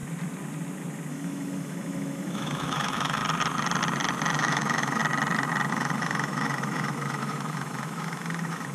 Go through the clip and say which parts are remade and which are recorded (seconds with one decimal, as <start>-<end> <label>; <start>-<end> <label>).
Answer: 0.0-1.1 recorded; 1.1-3.2 remade; 3.2-4.4 recorded; 4.4-5.0 remade; 5.0-5.7 recorded; 5.7-8.7 remade